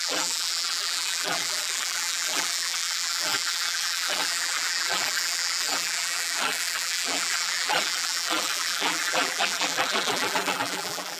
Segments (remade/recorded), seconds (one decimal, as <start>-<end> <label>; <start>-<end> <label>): 0.0-11.2 remade